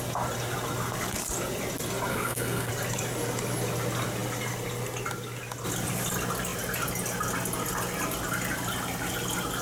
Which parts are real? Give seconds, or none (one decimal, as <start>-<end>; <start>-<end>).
0.0-2.1; 2.7-9.6